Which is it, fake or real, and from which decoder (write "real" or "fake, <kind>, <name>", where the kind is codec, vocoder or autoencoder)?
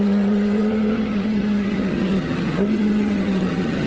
fake, vocoder, HiFi-GAN